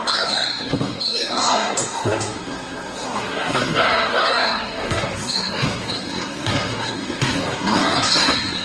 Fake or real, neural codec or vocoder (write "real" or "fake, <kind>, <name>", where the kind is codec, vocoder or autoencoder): fake, codec, SNAC